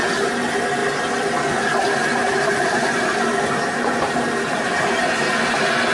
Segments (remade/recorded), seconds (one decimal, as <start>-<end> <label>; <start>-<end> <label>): 0.0-2.2 recorded; 2.2-5.2 remade; 5.2-5.9 recorded